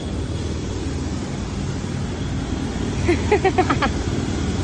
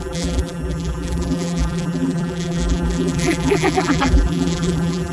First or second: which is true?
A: first